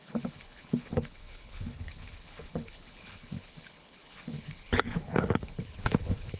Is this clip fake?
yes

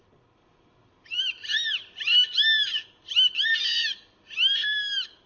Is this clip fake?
no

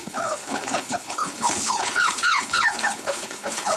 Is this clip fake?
yes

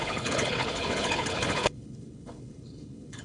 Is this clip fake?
yes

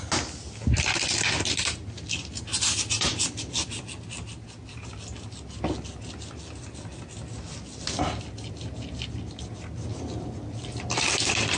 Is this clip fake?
no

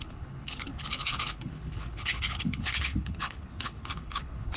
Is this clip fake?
yes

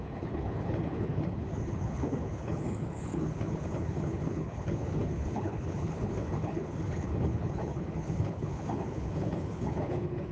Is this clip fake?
yes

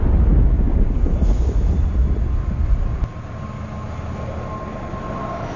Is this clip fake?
no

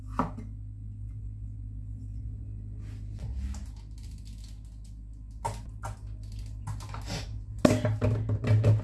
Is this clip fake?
no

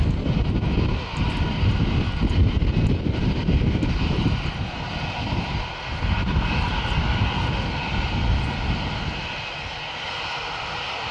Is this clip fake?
no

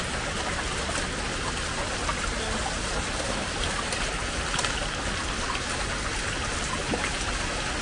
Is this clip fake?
no